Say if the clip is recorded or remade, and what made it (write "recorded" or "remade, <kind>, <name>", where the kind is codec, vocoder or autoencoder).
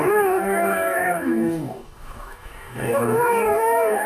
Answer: remade, codec, DAC